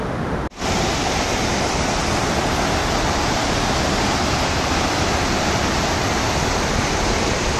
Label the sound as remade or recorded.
recorded